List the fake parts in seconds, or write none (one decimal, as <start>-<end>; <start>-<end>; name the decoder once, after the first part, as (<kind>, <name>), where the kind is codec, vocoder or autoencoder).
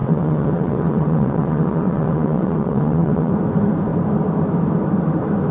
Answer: 0.0-3.3 (vocoder, WaveNeXt)